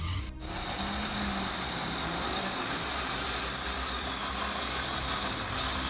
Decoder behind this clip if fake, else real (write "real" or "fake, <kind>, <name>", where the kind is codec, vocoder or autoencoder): real